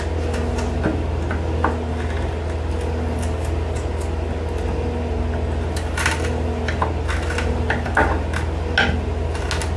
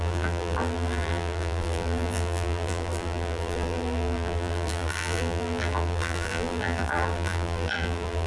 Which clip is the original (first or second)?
first